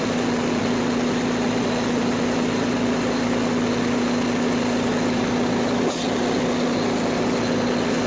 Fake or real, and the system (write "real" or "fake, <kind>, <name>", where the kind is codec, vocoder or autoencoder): real